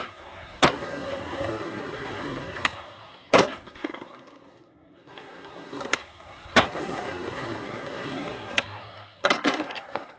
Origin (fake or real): fake